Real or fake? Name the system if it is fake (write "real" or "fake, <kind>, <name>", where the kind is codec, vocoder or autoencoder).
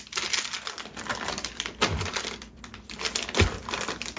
real